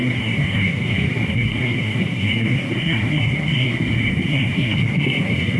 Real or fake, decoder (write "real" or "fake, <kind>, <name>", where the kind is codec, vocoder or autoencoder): fake, codec, SNAC